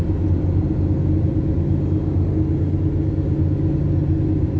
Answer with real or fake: real